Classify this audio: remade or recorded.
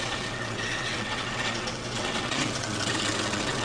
remade